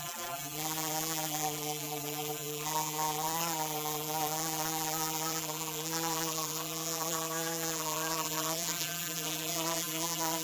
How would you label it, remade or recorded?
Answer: remade